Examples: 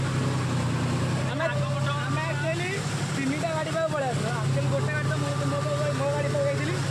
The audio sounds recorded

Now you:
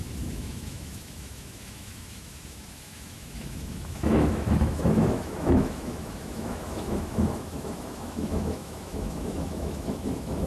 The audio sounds remade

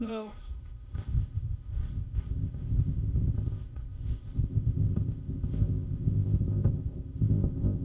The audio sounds remade